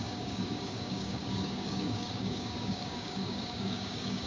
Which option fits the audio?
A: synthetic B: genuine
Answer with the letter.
A